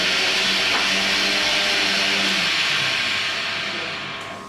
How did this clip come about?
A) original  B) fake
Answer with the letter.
A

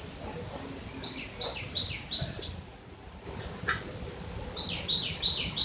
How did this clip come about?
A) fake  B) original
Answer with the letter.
B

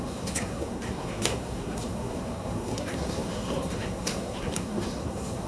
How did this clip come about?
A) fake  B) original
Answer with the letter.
A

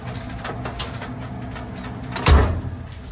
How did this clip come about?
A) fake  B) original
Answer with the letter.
B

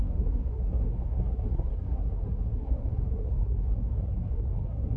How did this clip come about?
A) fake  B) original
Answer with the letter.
A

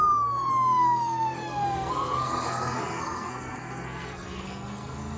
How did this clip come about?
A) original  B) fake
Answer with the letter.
B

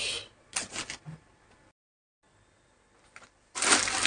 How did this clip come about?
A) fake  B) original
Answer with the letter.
B